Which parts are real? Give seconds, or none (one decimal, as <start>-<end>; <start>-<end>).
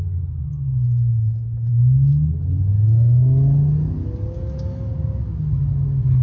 0.0-6.2